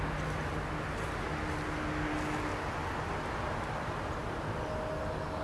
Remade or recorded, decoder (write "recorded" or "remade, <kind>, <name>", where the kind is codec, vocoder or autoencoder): recorded